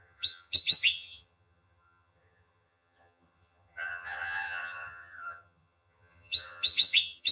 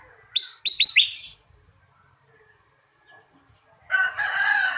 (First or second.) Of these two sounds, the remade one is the first